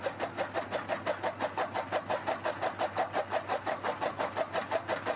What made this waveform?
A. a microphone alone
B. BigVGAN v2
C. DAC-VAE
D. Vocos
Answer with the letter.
A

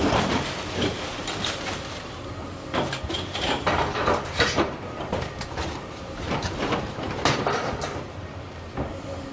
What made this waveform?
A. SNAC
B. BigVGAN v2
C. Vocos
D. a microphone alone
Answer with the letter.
B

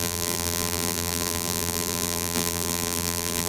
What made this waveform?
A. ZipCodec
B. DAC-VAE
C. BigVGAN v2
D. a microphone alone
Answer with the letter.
C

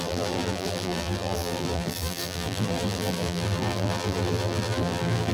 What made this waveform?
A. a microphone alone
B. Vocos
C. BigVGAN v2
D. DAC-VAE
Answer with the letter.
C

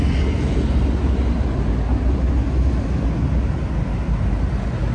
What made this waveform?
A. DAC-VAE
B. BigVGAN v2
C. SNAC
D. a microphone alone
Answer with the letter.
D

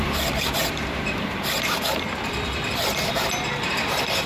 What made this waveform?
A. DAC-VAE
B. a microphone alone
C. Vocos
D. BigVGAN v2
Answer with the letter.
D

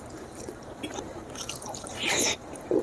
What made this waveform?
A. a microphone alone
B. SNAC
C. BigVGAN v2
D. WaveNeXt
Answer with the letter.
C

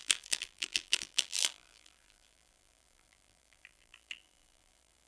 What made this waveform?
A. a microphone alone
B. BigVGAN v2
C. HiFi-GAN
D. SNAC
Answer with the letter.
B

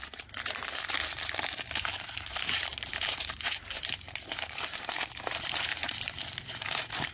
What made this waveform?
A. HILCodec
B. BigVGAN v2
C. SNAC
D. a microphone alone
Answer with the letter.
B